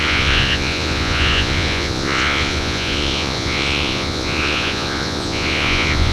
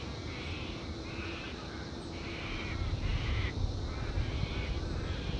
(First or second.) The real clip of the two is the second